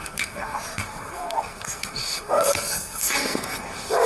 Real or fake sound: fake